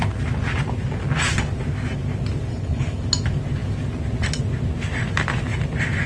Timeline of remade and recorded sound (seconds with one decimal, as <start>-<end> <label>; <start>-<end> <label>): 0.0-2.5 recorded; 2.5-3.0 remade; 3.0-6.1 recorded